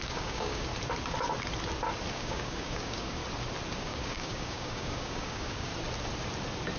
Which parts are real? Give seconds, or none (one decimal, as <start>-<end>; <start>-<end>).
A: 0.7-2.1; 3.2-3.8; 5.7-6.8